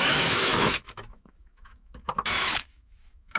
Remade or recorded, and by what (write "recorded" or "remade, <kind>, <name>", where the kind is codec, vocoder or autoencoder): remade, autoencoder, DAC-VAE